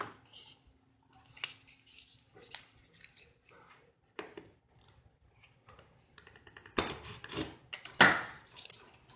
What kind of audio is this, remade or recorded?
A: recorded